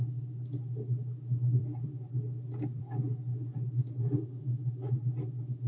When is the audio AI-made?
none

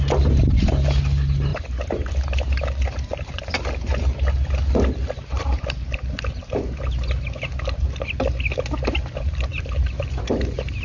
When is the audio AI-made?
none

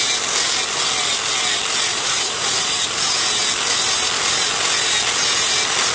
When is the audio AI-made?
1.9-2.8

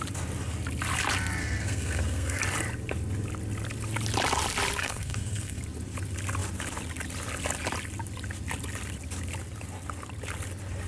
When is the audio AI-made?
1.4-2.4; 4.8-5.6

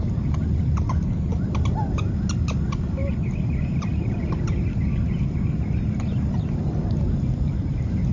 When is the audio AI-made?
none

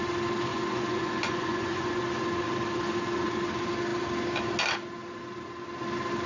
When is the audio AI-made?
0.5-2.0